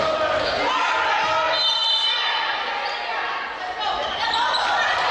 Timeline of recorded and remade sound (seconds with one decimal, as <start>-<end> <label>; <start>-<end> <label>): 0.0-5.1 recorded